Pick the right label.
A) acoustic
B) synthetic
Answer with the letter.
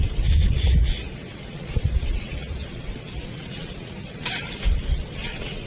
B